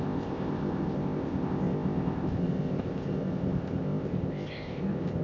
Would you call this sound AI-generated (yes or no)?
yes